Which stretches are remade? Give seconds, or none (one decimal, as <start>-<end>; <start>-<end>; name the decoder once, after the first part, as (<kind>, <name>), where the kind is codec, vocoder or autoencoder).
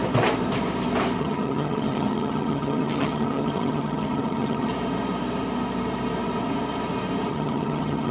1.2-4.7 (vocoder, HiFi-GAN); 7.3-8.1